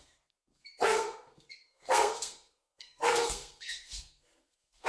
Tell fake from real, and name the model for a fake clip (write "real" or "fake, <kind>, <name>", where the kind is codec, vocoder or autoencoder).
fake, codec, SNAC